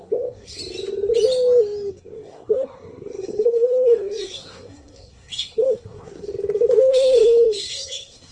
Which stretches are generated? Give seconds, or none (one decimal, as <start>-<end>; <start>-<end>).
0.0-0.6; 1.9-6.3; 6.9-8.3